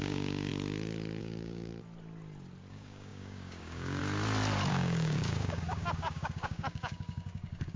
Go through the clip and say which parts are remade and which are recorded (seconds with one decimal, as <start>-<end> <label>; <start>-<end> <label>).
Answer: 0.0-0.5 remade; 0.5-1.2 recorded; 1.2-1.7 remade; 1.7-2.7 recorded; 2.7-4.0 remade; 4.0-4.7 recorded; 4.7-7.8 remade